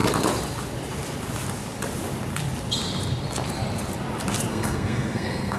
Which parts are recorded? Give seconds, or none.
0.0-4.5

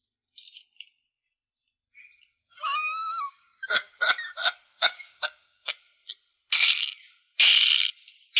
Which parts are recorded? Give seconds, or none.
0.0-2.4; 3.9-4.7; 5.7-8.4

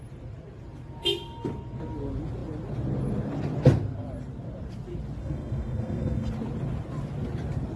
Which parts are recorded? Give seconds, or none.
0.0-5.2; 6.3-7.8

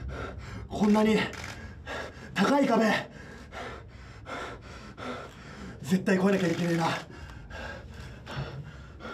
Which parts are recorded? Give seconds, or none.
0.0-4.4; 5.9-9.1